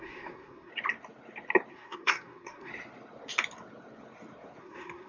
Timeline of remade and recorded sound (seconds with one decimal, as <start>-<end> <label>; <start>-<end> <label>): 0.0-0.7 remade; 0.7-1.7 recorded; 1.7-2.7 remade; 2.7-4.6 recorded; 4.6-5.1 remade